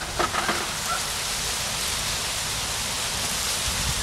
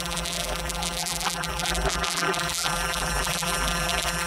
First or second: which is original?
first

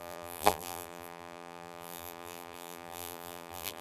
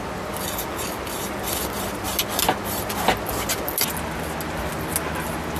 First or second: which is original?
second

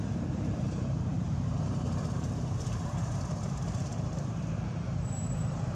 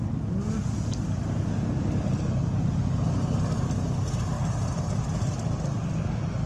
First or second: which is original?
second